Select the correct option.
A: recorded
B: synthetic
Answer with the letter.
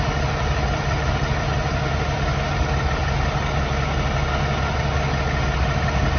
A